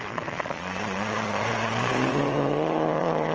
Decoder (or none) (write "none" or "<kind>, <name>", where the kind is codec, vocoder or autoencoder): vocoder, Vocos